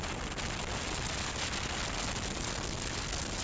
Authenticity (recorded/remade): recorded